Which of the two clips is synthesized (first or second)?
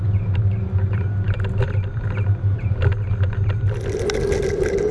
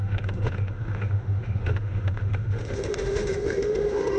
second